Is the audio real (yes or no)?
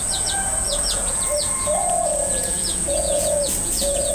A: no